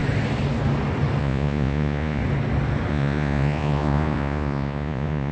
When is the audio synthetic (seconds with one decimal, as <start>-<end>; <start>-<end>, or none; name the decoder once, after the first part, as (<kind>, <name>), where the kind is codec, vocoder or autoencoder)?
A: 1.2-2.2 (vocoder, Vocos); 2.9-5.3